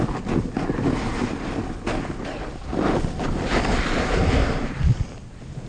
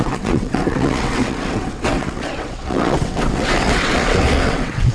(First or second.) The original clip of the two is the first